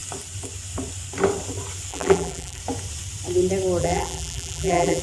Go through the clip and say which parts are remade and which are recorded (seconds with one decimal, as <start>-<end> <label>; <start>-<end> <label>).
0.0-1.9 recorded; 1.9-2.6 remade; 2.6-3.8 recorded; 3.8-5.0 remade